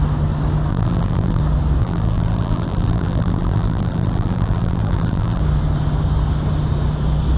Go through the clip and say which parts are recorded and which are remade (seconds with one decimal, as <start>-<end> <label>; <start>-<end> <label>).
0.0-0.7 recorded; 0.7-1.4 remade; 1.4-1.8 recorded; 1.8-5.4 remade; 5.4-7.4 recorded